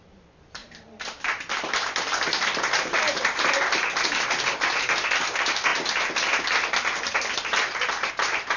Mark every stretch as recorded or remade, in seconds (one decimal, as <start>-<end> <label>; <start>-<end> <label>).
0.0-8.6 recorded